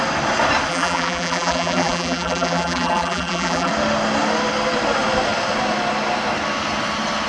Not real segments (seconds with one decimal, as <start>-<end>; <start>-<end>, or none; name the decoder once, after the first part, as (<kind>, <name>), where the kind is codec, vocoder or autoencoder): 0.7-3.7 (vocoder, BigVGAN v2)